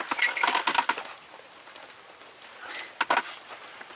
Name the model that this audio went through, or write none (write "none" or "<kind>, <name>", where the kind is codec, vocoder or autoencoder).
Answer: none